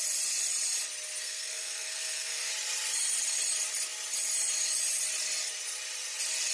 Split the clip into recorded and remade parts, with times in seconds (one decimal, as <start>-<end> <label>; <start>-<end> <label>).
0.0-1.2 recorded; 1.2-2.5 remade; 2.5-6.5 recorded